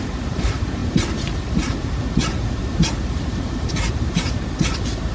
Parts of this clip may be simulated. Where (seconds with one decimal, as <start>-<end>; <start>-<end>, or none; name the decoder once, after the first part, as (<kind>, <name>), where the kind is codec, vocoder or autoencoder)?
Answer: 0.0-5.1 (vocoder, BigVGAN v2)

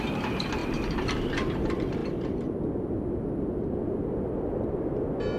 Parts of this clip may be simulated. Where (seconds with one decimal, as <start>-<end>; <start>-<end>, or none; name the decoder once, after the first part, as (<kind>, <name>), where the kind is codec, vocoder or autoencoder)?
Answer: none